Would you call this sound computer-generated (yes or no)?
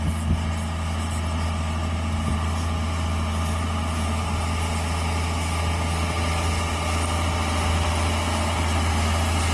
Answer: no